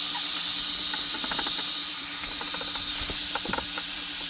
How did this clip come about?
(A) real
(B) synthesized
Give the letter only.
B